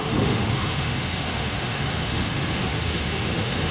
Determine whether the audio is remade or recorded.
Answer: remade